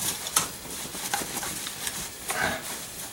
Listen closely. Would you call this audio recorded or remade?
remade